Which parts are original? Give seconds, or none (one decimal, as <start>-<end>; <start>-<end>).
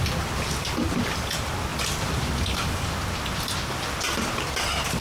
0.0-5.0